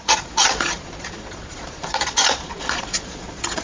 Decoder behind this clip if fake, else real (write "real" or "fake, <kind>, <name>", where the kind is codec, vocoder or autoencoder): fake, vocoder, Vocos